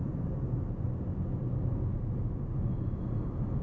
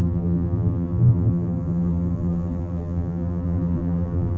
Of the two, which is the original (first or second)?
first